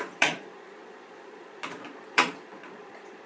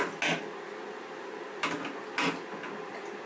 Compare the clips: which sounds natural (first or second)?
second